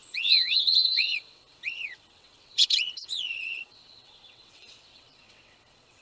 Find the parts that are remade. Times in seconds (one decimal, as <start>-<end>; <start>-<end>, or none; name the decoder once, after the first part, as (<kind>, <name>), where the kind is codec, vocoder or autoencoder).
0.0-6.0 (vocoder, WaveNeXt)